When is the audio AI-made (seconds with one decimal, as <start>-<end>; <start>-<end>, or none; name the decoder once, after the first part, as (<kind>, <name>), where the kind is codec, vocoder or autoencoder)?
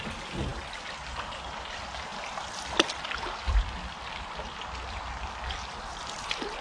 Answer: none